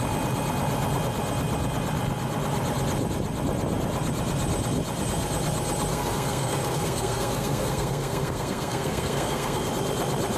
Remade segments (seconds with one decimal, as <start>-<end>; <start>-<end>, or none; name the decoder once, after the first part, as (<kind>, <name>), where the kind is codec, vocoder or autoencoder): 5.9-9.7 (codec, SNAC)

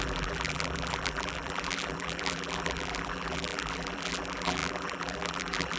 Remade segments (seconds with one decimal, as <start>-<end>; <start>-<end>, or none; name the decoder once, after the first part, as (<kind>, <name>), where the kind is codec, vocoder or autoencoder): 0.0-5.8 (vocoder, BigVGAN v2)